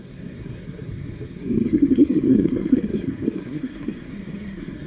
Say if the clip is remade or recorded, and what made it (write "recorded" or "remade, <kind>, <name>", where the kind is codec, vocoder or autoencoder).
remade, codec, SNAC